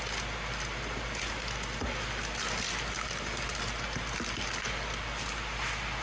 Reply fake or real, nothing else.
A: real